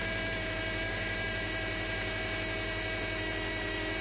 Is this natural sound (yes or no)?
yes